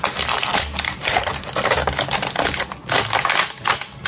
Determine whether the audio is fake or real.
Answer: real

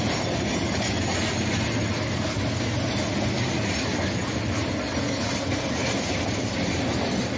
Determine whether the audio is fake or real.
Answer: real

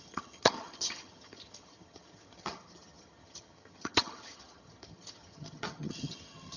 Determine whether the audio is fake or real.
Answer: fake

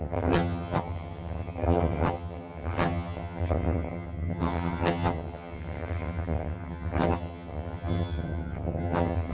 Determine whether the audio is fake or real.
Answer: fake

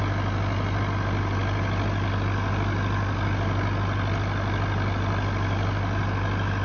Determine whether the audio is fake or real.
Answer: real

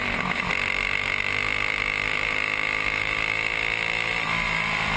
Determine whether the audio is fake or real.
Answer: real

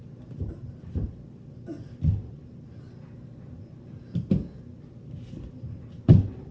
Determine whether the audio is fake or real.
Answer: real